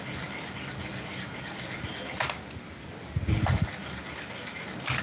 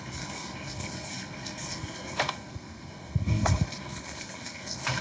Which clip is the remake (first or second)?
second